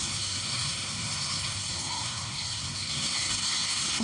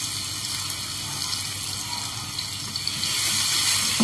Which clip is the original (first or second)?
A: second